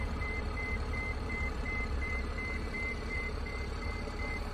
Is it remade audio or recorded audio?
remade